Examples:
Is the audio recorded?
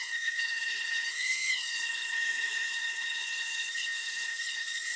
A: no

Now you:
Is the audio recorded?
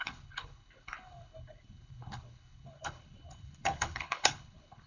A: no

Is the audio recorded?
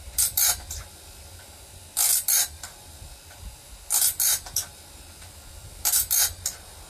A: yes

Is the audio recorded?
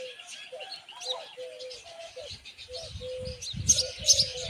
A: yes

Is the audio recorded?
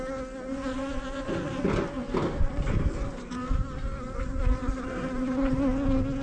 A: yes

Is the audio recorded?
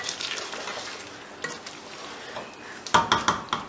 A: yes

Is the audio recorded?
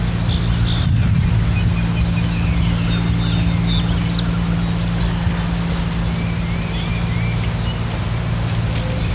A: yes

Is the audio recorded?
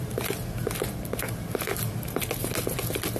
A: yes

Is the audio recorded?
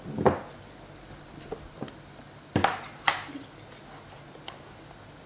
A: yes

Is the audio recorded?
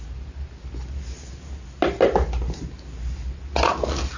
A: yes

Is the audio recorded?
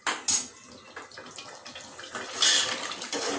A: yes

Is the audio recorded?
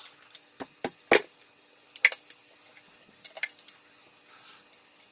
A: yes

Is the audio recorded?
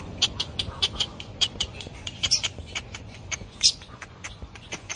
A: no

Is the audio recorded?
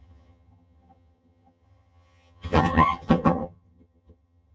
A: no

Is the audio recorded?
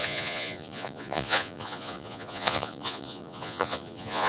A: no